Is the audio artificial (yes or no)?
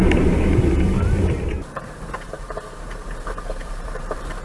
yes